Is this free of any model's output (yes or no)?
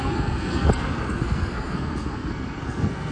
no